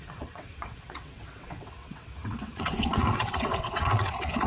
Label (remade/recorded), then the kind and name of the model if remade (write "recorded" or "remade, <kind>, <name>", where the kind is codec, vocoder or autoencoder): remade, vocoder, WaveNeXt